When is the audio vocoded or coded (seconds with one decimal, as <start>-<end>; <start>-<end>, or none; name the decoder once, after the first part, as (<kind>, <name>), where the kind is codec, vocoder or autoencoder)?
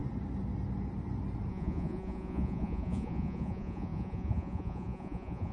1.5-5.5 (vocoder, Vocos)